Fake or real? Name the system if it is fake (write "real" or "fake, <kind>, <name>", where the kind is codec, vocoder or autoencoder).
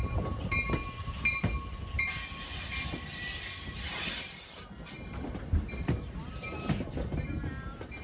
real